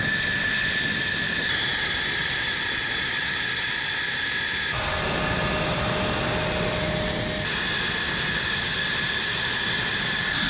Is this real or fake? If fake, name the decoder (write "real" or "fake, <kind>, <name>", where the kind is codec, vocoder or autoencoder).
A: real